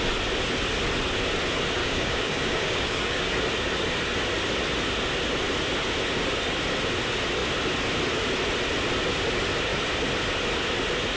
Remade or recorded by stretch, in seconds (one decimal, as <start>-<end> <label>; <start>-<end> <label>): 0.0-1.8 recorded; 1.8-3.3 remade; 3.3-11.2 recorded